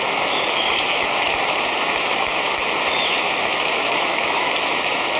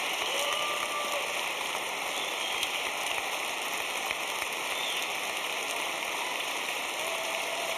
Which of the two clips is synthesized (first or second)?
first